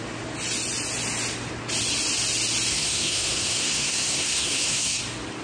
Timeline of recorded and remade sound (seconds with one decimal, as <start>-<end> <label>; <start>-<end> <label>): 0.0-2.7 recorded; 2.7-5.0 remade; 5.0-5.4 recorded